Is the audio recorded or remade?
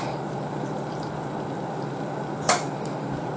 remade